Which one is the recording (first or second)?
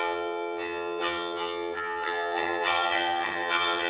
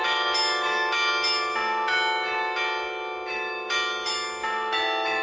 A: second